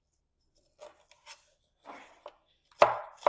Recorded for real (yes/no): yes